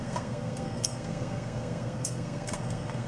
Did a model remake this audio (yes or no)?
yes